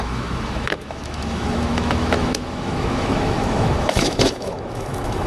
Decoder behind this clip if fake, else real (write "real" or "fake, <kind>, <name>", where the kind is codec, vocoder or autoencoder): fake, autoencoder, DAC-VAE